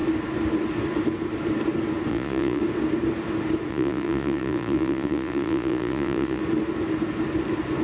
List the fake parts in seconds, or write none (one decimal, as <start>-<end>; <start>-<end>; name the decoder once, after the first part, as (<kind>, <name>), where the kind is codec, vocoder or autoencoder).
2.1-2.6 (vocoder, Vocos); 3.7-6.4

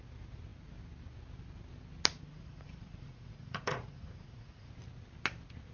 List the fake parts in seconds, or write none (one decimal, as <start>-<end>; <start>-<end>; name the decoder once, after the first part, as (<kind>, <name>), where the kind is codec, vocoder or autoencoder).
2.3-4.7 (vocoder, Vocos)

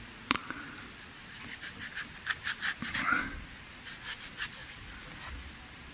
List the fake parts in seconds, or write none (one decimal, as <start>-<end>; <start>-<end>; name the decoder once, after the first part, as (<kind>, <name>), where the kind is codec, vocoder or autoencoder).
0.0-0.4 (vocoder, Vocos); 3.9-4.6

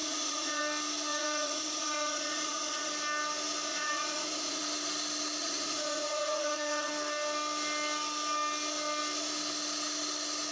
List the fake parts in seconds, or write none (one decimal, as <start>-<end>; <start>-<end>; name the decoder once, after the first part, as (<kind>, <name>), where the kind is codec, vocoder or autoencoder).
0.0-0.6 (vocoder, Vocos); 1.1-2.9; 3.7-4.6; 5.4-6.9